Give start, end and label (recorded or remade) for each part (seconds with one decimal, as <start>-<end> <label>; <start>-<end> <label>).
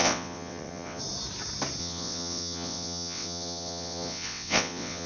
0.0-1.0 remade; 1.0-1.8 recorded; 1.8-5.1 remade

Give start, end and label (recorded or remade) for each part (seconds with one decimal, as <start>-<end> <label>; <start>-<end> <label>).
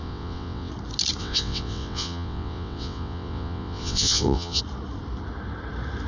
0.0-0.7 remade; 0.7-1.2 recorded; 1.2-4.6 remade; 4.6-6.1 recorded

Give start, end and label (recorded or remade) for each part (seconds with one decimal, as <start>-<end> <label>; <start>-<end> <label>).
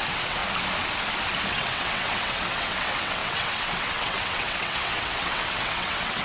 0.0-0.4 remade; 0.4-1.5 recorded; 1.5-6.2 remade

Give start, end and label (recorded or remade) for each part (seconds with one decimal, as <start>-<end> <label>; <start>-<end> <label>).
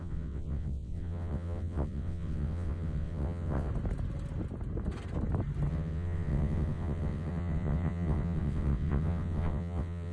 0.0-3.7 remade; 3.7-5.7 recorded; 5.7-10.1 remade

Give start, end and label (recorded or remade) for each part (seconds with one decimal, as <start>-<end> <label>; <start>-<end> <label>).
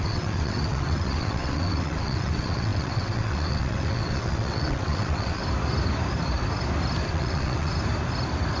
0.0-5.4 remade; 5.4-7.1 recorded; 7.1-7.7 remade; 7.7-8.6 recorded